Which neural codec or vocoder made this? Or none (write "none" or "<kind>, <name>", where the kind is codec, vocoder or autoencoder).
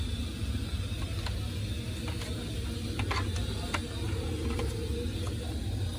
none